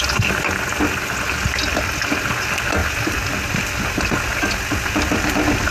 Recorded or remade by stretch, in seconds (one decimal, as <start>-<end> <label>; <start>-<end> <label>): 0.0-5.7 recorded